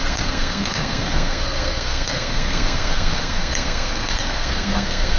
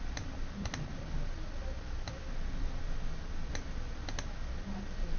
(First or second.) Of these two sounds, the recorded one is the second